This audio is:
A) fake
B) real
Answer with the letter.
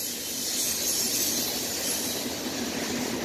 B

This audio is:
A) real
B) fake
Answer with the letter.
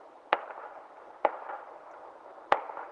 A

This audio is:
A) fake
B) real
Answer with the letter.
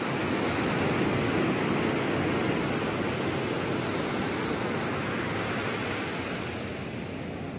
B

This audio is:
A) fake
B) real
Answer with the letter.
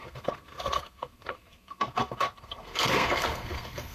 A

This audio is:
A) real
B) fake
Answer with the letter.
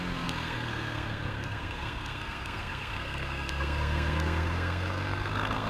B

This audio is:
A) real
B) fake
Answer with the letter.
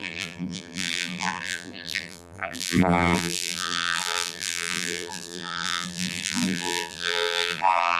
B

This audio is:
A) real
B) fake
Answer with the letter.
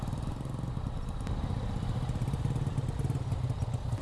A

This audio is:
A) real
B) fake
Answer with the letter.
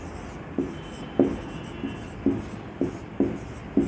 A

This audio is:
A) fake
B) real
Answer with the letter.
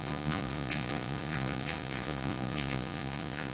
A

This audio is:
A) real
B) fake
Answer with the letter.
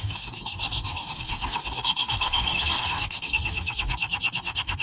B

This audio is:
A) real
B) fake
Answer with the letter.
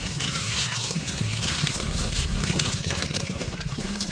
B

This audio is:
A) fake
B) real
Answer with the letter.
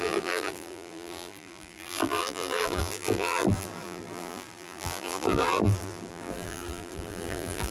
A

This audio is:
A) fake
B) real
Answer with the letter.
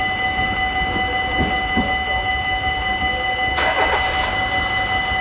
B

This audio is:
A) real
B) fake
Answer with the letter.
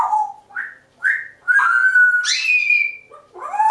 A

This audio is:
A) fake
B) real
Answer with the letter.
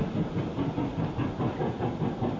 B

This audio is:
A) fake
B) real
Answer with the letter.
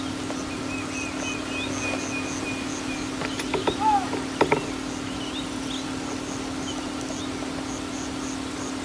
B